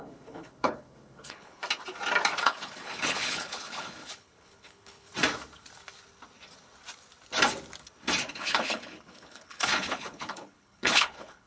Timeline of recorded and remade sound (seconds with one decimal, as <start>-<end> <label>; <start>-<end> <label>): 0.0-1.6 remade; 1.6-2.4 recorded; 2.4-5.1 remade; 5.1-8.3 recorded; 8.3-11.5 remade